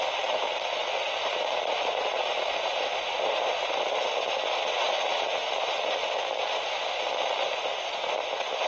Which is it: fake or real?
fake